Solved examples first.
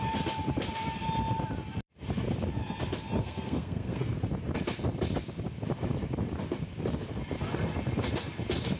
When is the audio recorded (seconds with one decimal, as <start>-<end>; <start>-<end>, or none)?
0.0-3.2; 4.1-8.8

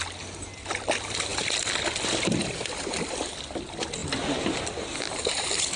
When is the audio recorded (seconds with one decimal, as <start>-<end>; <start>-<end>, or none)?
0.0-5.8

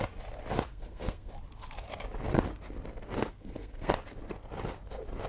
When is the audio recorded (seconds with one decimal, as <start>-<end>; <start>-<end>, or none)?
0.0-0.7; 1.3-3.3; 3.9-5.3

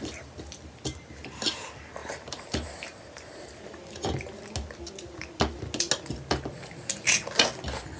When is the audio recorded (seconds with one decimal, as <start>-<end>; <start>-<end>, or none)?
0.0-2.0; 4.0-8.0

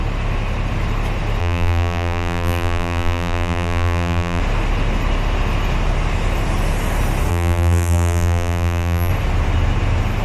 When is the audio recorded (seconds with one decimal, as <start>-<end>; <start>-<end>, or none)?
0.0-1.4; 4.4-7.3; 9.1-10.2

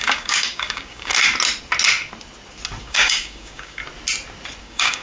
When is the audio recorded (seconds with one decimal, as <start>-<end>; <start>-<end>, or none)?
1.1-2.8; 3.8-4.6

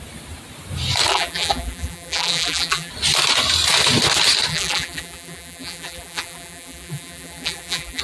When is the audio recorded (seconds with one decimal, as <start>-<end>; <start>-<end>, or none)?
0.0-1.1; 2.9-4.5